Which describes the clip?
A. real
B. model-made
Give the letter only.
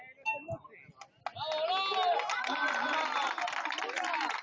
A